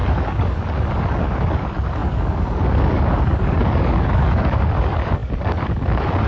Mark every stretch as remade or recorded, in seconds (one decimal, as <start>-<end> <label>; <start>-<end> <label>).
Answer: 0.0-6.3 remade